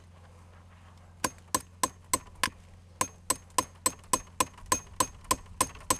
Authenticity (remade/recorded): recorded